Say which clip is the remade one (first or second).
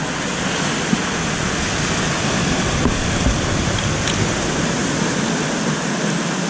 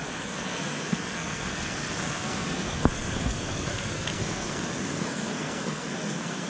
second